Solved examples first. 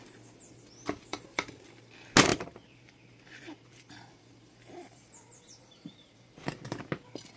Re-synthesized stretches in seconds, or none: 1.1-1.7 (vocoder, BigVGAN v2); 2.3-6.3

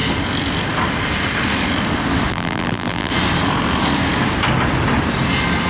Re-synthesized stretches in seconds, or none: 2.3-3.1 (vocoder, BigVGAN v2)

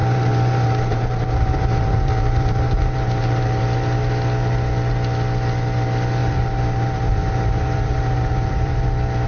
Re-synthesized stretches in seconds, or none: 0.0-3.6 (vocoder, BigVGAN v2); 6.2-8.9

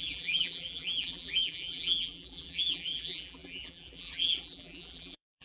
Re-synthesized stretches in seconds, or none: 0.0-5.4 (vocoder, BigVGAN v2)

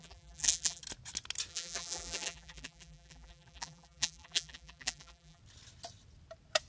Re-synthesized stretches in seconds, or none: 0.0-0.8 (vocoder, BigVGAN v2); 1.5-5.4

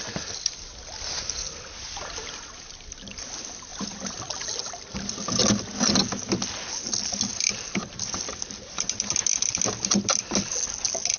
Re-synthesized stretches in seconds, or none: 3.7-5.4 (vocoder, BigVGAN v2); 7.3-9.6